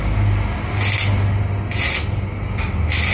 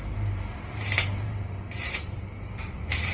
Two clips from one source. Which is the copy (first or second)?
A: second